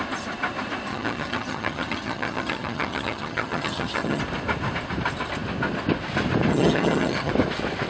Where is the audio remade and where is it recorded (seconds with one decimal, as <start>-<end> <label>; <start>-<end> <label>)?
0.0-0.9 recorded; 0.9-4.2 remade; 4.2-6.5 recorded; 6.5-7.3 remade; 7.3-7.9 recorded